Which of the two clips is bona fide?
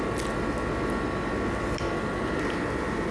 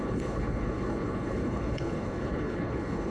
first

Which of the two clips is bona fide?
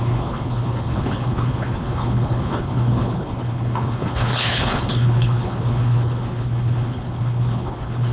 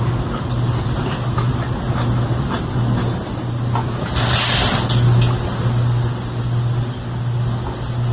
second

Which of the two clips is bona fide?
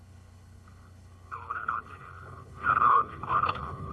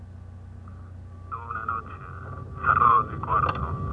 second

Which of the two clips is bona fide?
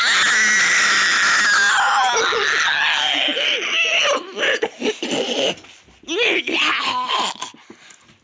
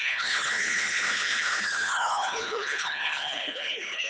first